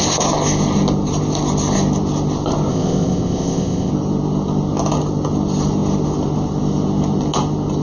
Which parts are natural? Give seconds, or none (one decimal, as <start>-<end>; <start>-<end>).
0.0-2.7; 3.9-7.8

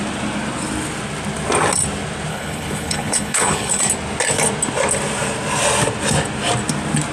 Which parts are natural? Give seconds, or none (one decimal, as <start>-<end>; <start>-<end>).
0.0-2.3; 3.8-7.1

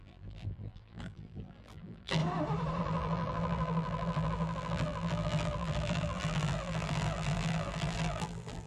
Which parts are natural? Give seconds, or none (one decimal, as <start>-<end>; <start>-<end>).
2.2-2.8

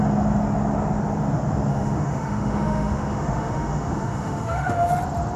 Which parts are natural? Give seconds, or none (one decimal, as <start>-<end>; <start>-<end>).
0.0-1.7; 4.9-5.4

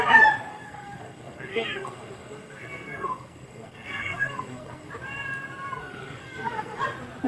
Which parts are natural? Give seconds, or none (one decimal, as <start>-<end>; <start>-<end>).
0.0-0.5; 4.9-5.8; 6.8-7.3